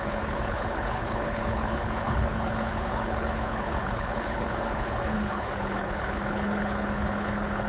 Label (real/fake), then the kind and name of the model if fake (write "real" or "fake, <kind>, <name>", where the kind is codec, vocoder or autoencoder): fake, codec, HILCodec